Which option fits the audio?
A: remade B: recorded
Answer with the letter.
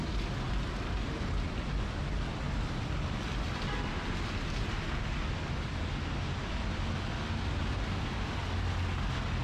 B